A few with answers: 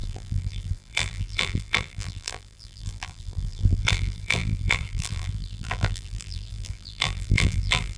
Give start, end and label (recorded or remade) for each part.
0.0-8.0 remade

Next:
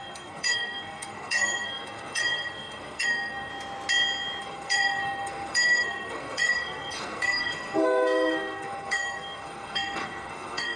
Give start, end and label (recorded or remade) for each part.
0.0-3.5 remade; 3.5-4.4 recorded; 4.4-10.8 remade

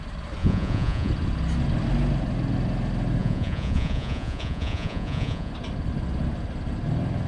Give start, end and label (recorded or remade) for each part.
0.0-0.4 recorded; 0.4-1.1 remade; 1.1-3.2 recorded; 3.2-5.5 remade; 5.5-7.3 recorded

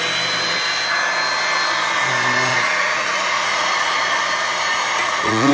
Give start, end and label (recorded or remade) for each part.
0.0-2.5 recorded; 2.5-4.0 remade; 4.0-5.0 recorded; 5.0-5.5 remade

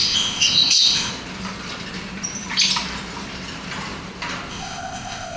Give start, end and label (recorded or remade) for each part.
0.0-1.1 remade; 1.1-4.5 recorded; 4.5-5.4 remade

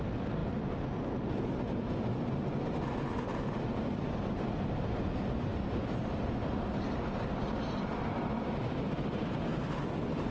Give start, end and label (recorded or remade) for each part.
0.0-10.3 recorded